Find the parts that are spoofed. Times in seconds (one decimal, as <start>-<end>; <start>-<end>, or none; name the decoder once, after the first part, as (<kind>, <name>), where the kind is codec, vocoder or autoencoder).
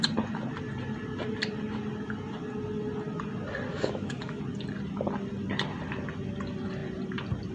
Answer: 3.7-4.4 (autoencoder, DAC-VAE)